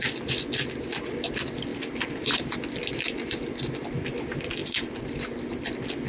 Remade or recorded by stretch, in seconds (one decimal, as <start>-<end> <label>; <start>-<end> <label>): 0.0-1.7 recorded; 1.7-2.4 remade; 2.4-4.6 recorded; 4.6-5.1 remade; 5.1-6.1 recorded